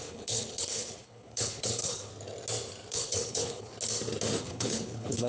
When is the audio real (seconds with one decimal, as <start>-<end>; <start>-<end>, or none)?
2.1-2.9; 3.7-4.4